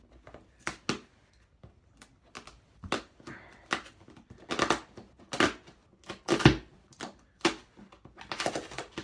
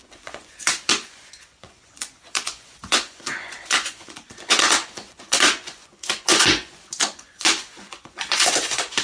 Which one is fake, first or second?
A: second